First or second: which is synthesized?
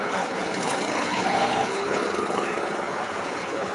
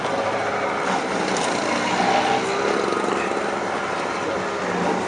first